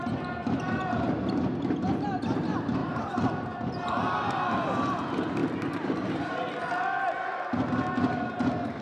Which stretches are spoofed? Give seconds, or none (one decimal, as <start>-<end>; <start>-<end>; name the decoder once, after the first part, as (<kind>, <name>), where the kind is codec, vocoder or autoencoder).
5.4-6.3 (vocoder, BigVGAN v2)